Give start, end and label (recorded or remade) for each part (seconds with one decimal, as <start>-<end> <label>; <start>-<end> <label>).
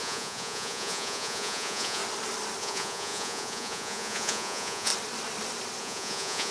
0.0-2.0 remade; 2.0-2.6 recorded; 2.6-4.9 remade; 4.9-5.8 recorded; 5.8-6.5 remade